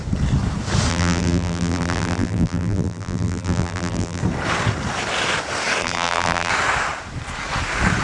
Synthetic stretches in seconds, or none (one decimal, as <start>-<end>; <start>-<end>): 0.9-4.2; 5.8-6.5